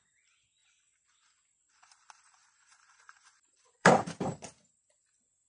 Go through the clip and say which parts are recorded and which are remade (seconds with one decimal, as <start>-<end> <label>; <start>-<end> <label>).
0.0-0.6 recorded; 0.6-3.9 remade; 3.9-5.5 recorded